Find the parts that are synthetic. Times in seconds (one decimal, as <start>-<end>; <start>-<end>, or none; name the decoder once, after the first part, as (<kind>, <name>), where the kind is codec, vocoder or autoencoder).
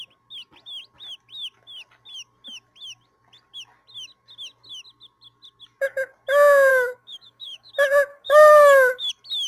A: 6.7-7.7 (codec, DAC); 8.1-9.1